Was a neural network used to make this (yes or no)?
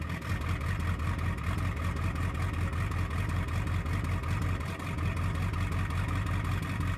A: no